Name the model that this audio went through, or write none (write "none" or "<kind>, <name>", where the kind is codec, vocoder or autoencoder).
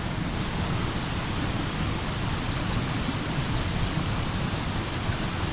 none